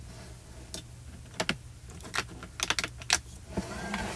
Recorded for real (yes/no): yes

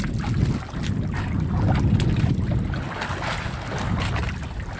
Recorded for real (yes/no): yes